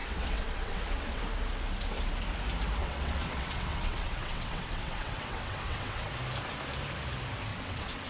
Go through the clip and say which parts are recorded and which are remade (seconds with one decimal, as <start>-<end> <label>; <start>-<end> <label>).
0.0-1.2 remade; 1.2-2.8 recorded; 2.8-6.1 remade; 6.1-7.5 recorded; 7.5-8.1 remade

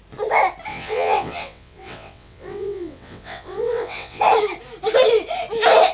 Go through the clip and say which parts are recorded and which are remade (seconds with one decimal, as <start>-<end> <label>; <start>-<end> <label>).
0.0-0.7 recorded; 0.7-4.2 remade; 4.2-5.9 recorded

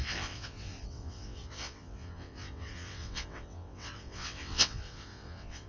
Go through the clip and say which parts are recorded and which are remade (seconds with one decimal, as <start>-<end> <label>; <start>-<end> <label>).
0.0-5.7 remade

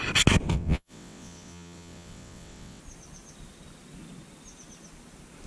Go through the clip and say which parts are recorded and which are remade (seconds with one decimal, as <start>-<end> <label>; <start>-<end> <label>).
0.0-0.5 recorded; 0.5-2.8 remade; 2.8-5.5 recorded

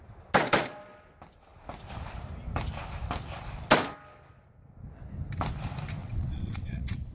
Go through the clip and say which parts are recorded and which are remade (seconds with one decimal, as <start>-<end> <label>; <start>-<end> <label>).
0.0-6.0 recorded; 6.0-7.1 remade

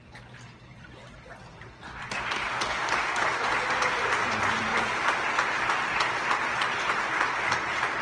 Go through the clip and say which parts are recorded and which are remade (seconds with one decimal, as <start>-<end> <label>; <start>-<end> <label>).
0.0-8.0 recorded